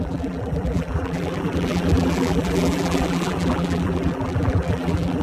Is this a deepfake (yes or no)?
yes